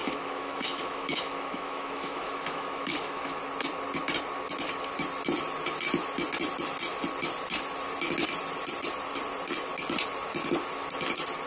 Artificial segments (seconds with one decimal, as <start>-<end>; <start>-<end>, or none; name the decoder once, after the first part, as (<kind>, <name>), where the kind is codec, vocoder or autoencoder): 0.0-3.4 (autoencoder, DAC-VAE)